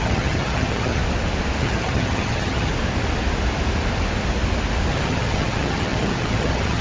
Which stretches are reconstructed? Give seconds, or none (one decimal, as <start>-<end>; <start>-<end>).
0.0-1.0; 1.6-2.7; 4.9-6.8